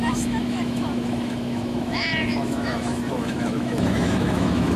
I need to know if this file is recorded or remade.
remade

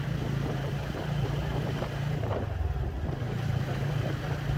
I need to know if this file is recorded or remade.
remade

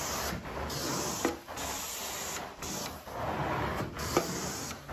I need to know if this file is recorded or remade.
recorded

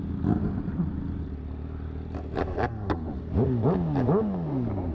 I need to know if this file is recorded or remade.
recorded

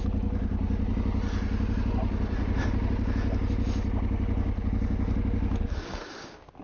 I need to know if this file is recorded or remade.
recorded